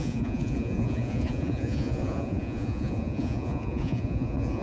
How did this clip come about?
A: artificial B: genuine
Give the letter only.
A